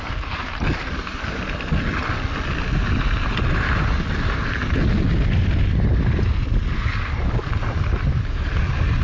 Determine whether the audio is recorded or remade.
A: recorded